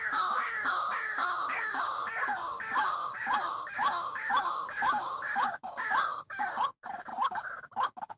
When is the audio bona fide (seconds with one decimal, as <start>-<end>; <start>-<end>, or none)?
none